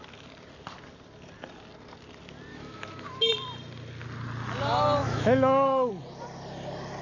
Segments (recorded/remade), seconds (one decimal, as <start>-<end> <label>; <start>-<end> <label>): 0.0-2.5 recorded; 2.5-3.3 remade; 3.3-5.0 recorded; 5.0-5.9 remade; 5.9-7.0 recorded